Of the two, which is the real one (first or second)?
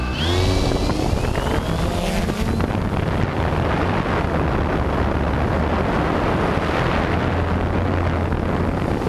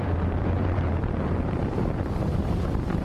first